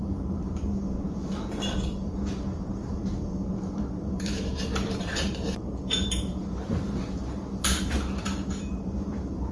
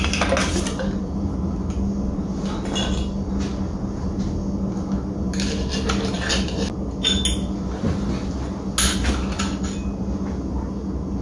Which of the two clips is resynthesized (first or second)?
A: first